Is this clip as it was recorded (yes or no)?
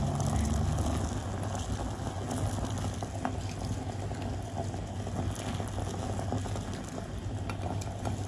yes